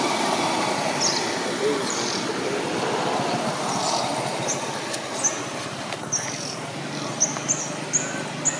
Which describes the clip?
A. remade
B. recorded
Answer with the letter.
B